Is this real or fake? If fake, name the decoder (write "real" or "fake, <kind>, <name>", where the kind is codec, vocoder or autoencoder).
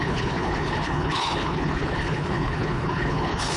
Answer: fake, codec, HILCodec